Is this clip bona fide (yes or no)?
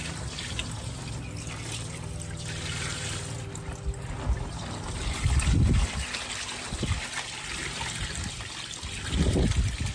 yes